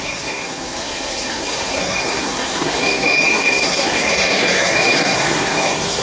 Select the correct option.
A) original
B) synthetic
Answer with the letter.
B